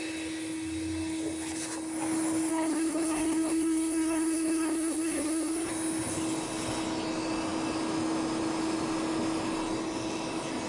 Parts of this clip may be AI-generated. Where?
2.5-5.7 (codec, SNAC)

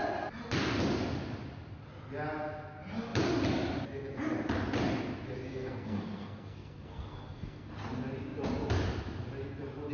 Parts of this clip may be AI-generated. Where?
5.5-7.8 (codec, SNAC)

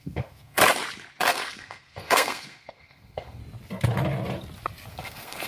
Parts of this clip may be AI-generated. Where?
0.0-0.6 (codec, SNAC); 1.2-3.4; 4.9-5.5